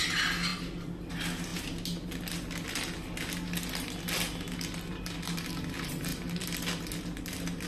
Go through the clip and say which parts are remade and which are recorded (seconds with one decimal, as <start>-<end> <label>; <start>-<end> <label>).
0.0-7.7 recorded